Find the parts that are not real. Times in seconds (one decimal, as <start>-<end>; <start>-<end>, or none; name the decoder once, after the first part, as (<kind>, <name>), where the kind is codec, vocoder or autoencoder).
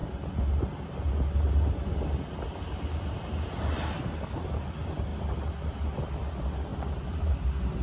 6.7-7.8 (vocoder, BigVGAN v2)